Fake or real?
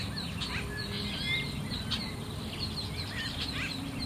fake